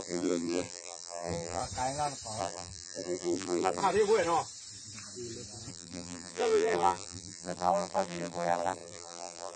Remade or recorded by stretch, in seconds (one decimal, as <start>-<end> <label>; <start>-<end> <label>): 0.0-1.6 remade; 1.6-2.4 recorded; 2.4-3.8 remade; 3.8-5.7 recorded; 5.7-9.6 remade